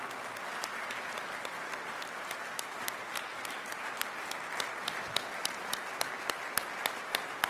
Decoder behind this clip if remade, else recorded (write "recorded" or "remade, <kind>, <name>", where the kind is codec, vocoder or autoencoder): recorded